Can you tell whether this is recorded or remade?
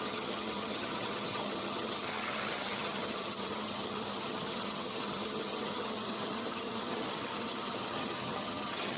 remade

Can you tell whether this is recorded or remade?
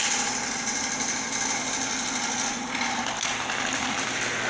recorded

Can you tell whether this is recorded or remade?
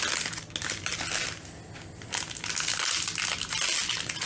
recorded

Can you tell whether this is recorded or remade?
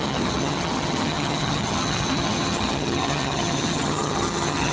remade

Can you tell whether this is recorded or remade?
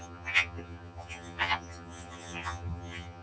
remade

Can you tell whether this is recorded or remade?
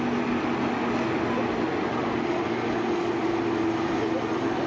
recorded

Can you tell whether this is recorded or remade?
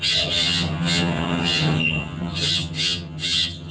remade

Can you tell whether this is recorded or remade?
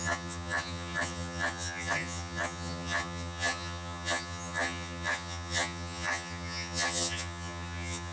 remade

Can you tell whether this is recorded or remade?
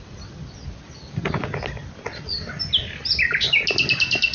recorded